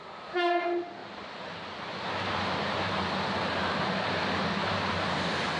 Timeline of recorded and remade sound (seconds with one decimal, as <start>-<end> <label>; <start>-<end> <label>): 0.0-1.0 recorded; 1.0-4.4 remade; 4.4-5.6 recorded